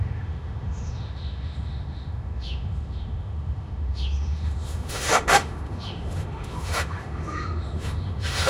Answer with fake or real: fake